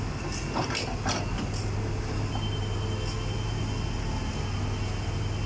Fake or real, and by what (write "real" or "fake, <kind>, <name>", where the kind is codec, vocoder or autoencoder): real